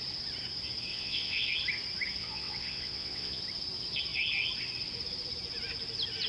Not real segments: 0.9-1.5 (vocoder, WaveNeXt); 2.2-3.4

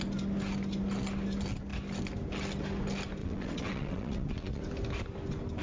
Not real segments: 3.2-4.6 (vocoder, WaveNeXt)